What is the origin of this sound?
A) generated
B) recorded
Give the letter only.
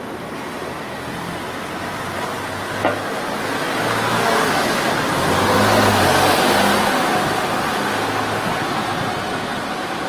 B